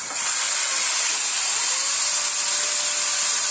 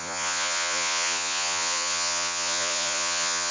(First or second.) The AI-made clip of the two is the second